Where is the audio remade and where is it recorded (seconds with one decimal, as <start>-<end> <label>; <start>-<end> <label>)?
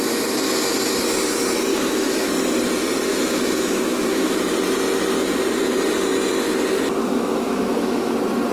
0.0-1.7 recorded; 1.7-2.3 remade; 2.3-3.1 recorded; 3.1-4.4 remade; 4.4-7.0 recorded; 7.0-8.1 remade; 8.1-8.5 recorded